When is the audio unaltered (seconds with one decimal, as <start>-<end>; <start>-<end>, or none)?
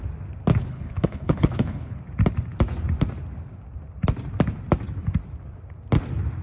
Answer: 0.0-0.6; 2.0-6.4